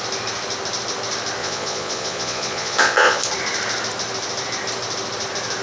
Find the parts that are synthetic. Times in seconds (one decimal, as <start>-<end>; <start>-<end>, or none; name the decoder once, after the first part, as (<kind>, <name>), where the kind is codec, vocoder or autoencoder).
1.4-3.3 (vocoder, Vocos)